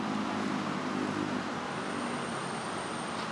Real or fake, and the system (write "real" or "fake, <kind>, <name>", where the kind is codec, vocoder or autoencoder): real